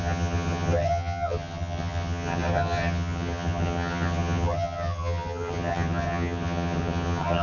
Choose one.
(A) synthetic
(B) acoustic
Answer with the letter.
A